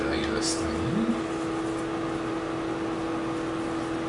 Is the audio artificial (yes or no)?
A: no